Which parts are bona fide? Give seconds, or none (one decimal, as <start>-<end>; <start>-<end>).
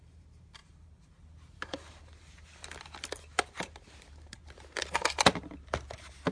0.0-6.3